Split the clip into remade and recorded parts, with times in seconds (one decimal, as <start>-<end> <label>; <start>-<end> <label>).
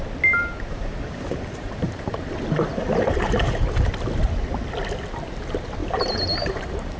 0.0-0.4 recorded; 0.4-2.4 remade; 2.4-2.8 recorded; 2.8-3.9 remade; 3.9-5.8 recorded; 5.8-7.0 remade